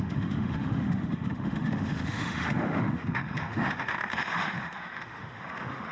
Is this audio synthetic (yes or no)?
yes